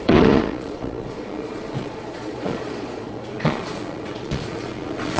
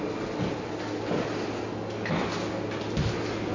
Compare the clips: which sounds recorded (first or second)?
second